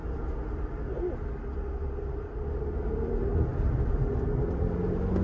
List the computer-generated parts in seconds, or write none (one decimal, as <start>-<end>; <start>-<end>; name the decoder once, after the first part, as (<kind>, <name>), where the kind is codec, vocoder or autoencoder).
none